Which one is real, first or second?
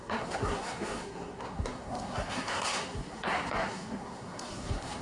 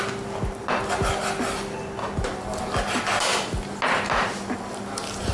second